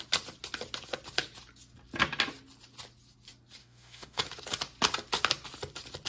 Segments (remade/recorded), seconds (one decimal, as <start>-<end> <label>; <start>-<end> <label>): 0.0-3.6 recorded; 3.6-4.2 remade; 4.2-6.1 recorded